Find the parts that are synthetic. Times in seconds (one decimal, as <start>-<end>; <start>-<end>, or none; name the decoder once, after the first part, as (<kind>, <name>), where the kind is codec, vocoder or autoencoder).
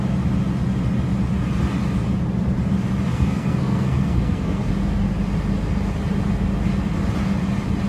3.1-4.7 (codec, SNAC)